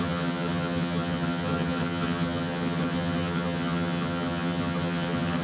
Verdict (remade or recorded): remade